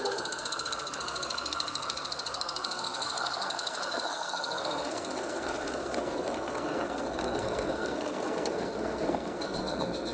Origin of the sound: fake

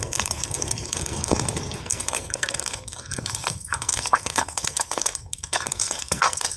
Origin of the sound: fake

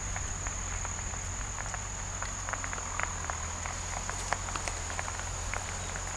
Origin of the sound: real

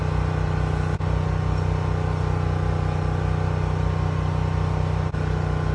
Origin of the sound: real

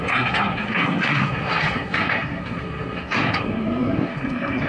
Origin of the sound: fake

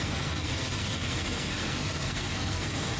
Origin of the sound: fake